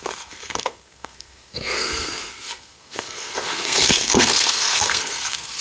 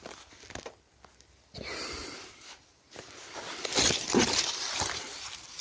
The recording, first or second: second